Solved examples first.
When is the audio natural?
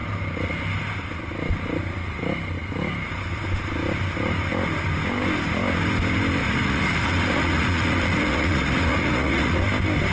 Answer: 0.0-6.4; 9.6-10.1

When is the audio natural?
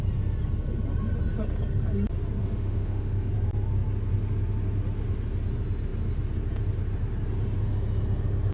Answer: 0.0-2.4; 3.3-8.5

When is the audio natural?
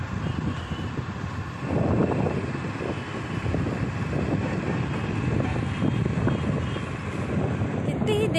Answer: 0.0-8.4